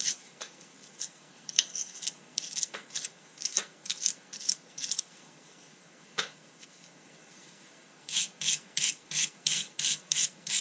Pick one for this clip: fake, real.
fake